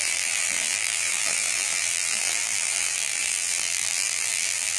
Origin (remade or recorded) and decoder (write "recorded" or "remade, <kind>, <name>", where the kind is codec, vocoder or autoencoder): remade, vocoder, BigVGAN v2